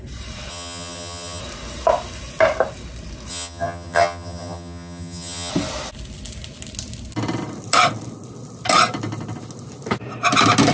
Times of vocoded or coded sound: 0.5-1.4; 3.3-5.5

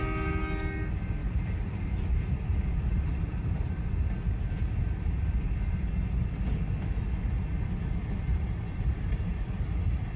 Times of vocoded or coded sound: 1.2-1.9; 2.9-3.8; 8.3-9.1

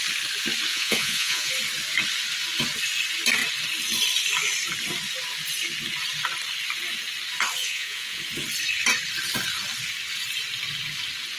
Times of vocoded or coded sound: 0.7-1.5; 7.6-8.2

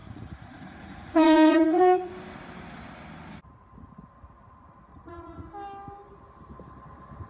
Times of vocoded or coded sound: 0.0-2.1; 4.9-5.5

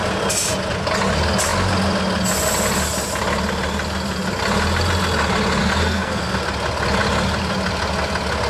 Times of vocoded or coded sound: 5.6-6.4

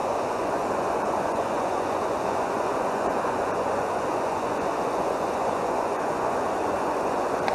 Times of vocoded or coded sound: 0.0-7.5

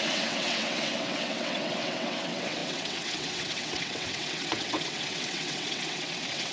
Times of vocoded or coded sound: 0.0-6.5

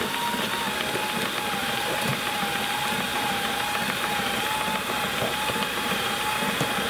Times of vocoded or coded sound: 1.6-2.5; 3.1-4.4; 5.2-6.5